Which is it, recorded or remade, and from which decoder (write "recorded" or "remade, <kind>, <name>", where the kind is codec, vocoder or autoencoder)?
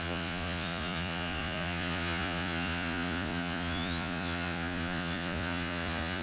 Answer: remade, vocoder, Vocos